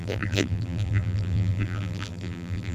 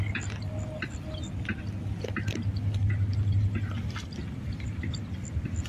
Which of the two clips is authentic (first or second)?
second